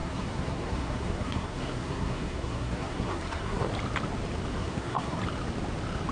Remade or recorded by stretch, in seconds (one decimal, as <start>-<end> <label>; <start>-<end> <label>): 0.0-3.7 remade; 3.7-4.5 recorded; 4.5-5.2 remade; 5.2-6.1 recorded